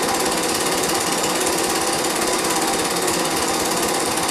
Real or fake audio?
real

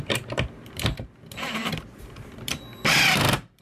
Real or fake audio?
fake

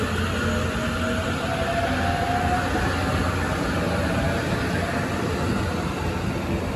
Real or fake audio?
real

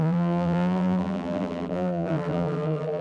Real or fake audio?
fake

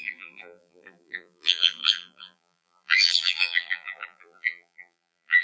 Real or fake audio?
fake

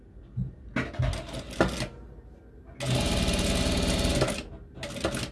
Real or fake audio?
real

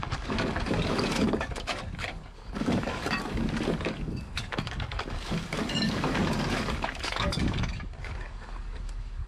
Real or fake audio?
fake